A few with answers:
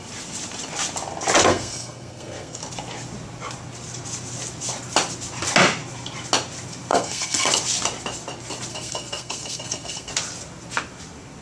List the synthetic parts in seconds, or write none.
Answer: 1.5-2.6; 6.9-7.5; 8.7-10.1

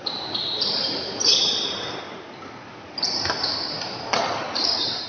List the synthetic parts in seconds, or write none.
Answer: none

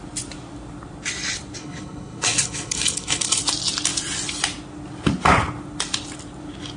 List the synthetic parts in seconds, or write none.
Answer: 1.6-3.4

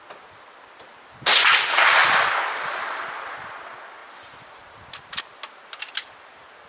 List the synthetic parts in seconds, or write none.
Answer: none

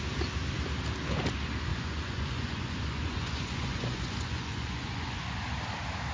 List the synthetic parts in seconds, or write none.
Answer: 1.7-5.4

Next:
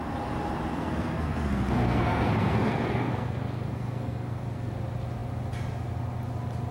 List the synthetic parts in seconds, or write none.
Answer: 0.7-4.7

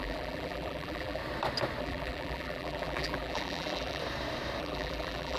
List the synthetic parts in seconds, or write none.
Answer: 0.0-1.2; 1.8-4.0; 4.6-5.4

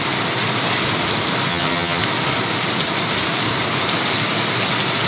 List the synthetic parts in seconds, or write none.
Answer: 1.5-2.0